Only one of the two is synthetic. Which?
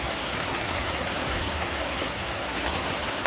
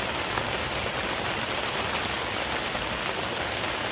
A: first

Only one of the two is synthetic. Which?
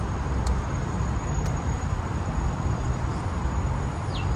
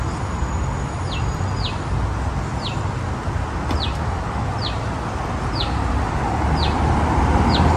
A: first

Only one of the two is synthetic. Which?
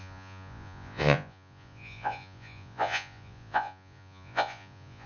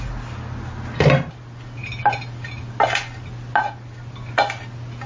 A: first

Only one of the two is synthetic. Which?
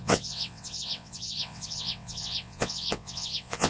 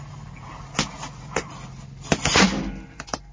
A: first